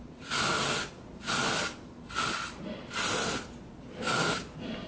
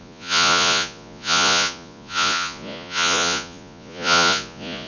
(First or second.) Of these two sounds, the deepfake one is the second